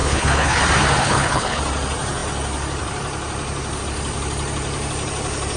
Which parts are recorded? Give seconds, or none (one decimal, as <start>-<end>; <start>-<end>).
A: 0.6-1.0; 1.6-5.6